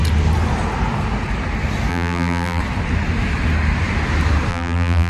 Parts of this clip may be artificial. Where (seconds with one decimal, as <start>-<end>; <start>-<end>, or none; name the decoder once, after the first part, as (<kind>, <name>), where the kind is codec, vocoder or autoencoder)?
1.9-2.6 (vocoder, BigVGAN v2); 4.5-5.1